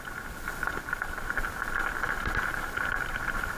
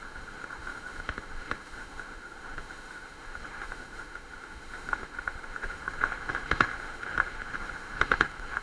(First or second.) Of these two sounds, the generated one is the second